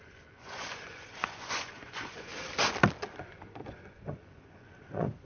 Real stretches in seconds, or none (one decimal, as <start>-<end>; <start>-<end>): 2.3-3.1